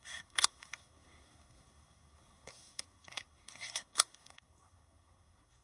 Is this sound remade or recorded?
remade